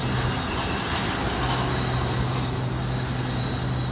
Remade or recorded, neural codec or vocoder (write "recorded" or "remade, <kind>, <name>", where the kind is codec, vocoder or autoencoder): recorded